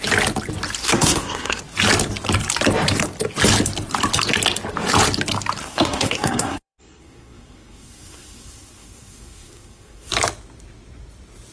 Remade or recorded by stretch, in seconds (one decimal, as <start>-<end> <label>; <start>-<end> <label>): 0.0-0.8 recorded; 0.8-1.6 remade; 1.6-5.6 recorded; 5.6-10.1 remade; 10.1-11.5 recorded

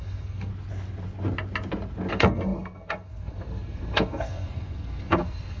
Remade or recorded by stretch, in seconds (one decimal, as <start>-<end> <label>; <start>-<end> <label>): 0.0-0.5 remade; 0.5-2.1 recorded; 2.1-5.6 remade

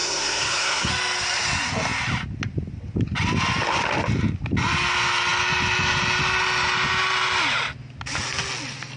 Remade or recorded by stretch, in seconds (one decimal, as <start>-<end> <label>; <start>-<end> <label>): 0.0-0.9 remade; 0.9-9.0 recorded

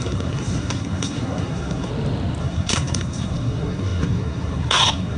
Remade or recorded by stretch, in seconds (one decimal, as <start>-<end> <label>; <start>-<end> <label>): 0.0-1.9 remade; 1.9-2.4 recorded; 2.4-5.2 remade

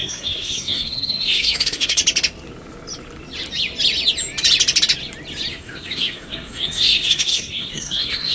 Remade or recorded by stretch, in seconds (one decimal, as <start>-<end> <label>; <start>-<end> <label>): 0.0-2.0 remade; 2.0-5.5 recorded; 5.5-8.3 remade

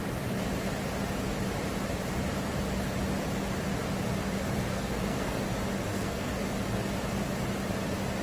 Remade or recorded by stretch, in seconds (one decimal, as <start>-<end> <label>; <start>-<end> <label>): 0.0-4.7 recorded; 4.7-5.4 remade; 5.4-5.9 recorded; 5.9-6.4 remade; 6.4-8.2 recorded

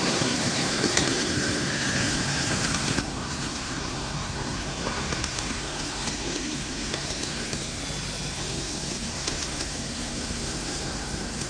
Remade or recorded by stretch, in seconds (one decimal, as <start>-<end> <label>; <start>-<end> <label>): 0.0-7.8 remade; 7.8-8.3 recorded; 8.3-11.5 remade

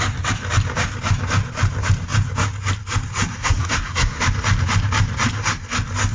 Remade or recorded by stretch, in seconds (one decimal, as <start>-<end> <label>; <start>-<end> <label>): 0.0-3.4 recorded; 3.4-4.2 remade; 4.2-6.1 recorded